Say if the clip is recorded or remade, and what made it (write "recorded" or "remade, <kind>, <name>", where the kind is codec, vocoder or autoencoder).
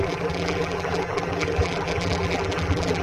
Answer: remade, vocoder, BigVGAN v2